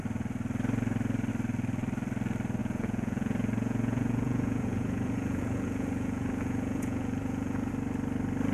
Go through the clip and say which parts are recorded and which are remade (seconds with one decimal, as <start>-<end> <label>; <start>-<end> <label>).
0.0-2.6 recorded; 2.6-7.7 remade; 7.7-8.5 recorded